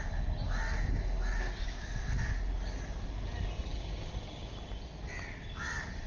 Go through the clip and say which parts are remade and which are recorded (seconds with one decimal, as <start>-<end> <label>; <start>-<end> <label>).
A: 0.0-6.1 recorded